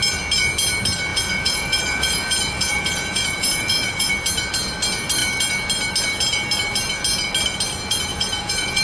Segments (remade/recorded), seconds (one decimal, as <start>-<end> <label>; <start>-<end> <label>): 0.0-1.1 recorded; 1.1-4.1 remade; 4.1-8.1 recorded; 8.1-8.8 remade